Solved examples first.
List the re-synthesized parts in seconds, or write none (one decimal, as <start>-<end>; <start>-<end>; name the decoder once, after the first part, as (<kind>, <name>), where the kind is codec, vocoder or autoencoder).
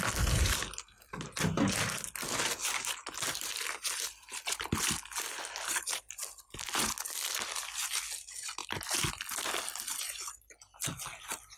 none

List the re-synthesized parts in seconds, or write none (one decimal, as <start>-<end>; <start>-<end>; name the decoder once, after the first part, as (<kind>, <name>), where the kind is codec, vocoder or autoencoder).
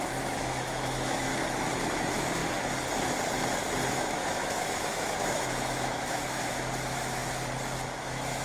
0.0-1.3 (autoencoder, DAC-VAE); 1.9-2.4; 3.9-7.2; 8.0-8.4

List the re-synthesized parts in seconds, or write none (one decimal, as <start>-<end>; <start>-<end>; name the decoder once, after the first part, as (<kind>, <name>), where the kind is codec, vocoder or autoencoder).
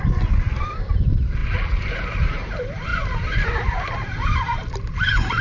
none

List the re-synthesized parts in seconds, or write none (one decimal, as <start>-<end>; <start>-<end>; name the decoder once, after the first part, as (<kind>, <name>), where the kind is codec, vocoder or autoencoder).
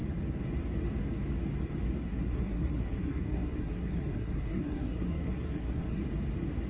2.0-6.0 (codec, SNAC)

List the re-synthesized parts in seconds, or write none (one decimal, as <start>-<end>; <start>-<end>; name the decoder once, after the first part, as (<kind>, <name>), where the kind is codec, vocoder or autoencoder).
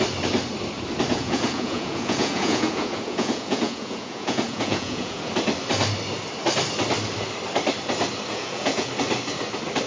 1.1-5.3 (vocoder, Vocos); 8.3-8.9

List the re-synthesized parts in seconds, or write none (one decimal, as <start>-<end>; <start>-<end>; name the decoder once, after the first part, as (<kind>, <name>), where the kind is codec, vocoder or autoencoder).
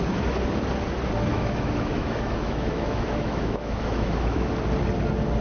1.3-4.5 (autoencoder, DAC-VAE)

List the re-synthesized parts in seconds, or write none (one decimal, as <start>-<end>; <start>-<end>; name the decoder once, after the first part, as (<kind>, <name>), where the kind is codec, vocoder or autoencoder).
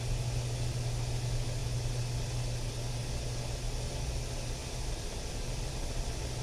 4.6-5.3 (vocoder, BigVGAN v2)